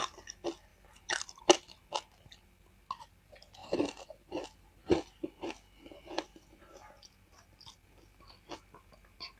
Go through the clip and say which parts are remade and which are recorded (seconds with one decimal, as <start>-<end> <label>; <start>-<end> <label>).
0.0-0.7 recorded; 0.7-1.4 remade; 1.4-3.6 recorded; 3.6-6.5 remade; 6.5-9.4 recorded